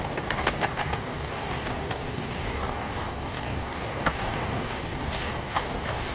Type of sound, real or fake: fake